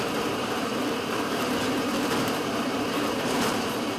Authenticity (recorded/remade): remade